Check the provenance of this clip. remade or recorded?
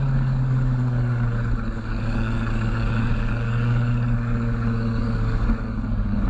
remade